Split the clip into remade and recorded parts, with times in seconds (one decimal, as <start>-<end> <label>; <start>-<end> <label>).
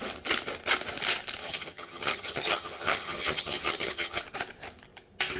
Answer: 0.0-1.4 recorded; 1.4-4.2 remade; 4.2-5.4 recorded